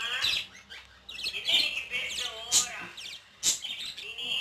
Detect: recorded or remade recorded